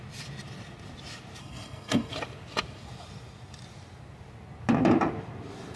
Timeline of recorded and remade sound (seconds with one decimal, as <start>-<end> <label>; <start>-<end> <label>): 0.0-1.4 recorded; 1.4-2.1 remade; 2.1-5.8 recorded